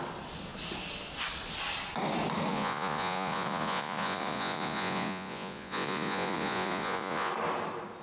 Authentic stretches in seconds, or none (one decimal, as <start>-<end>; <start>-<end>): 0.0-2.5; 7.3-8.0